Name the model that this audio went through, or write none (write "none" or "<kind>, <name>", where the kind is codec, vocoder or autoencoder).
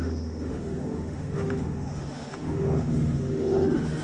autoencoder, DAC-VAE